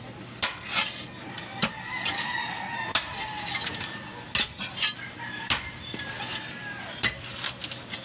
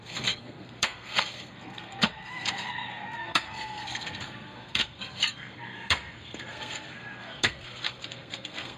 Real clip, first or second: first